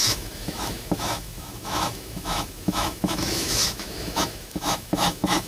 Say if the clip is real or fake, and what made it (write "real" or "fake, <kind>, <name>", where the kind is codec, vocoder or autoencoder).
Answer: fake, autoencoder, DAC-VAE